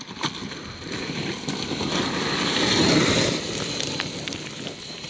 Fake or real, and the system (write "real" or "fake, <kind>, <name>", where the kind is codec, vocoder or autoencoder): real